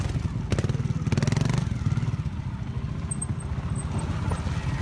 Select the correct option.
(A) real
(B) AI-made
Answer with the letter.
A